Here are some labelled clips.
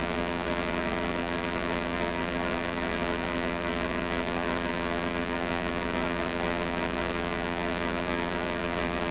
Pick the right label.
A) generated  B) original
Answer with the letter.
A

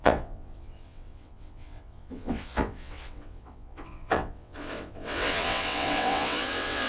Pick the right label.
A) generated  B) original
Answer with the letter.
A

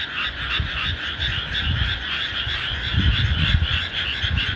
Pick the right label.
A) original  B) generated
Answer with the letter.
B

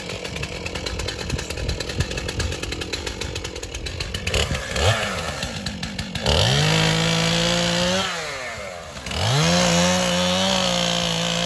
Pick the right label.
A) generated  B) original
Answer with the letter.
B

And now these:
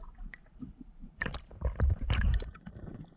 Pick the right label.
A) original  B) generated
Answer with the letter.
B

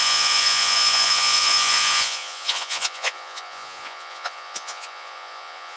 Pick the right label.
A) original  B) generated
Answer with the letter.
B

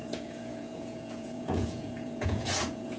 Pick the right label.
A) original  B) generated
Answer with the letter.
B